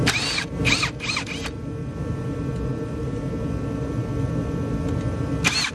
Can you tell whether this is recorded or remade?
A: recorded